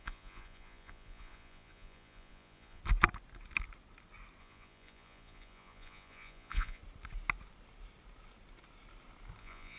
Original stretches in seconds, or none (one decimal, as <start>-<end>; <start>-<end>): 2.8-4.4; 6.8-9.4